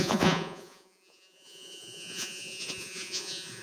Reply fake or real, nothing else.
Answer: fake